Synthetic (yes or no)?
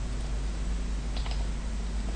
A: no